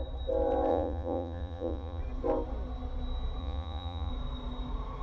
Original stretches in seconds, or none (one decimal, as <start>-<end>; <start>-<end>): 0.0-0.7; 2.0-3.4; 4.1-5.0